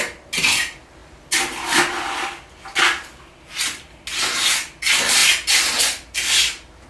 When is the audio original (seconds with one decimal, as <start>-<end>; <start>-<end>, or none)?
0.0-6.9